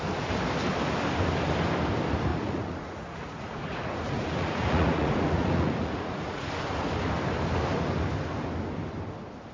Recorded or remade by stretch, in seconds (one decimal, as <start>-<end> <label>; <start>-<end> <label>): 0.0-2.3 recorded; 2.3-6.5 remade; 6.5-9.5 recorded